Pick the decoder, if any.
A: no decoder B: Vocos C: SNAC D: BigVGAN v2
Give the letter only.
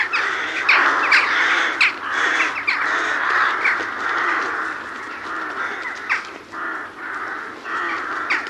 A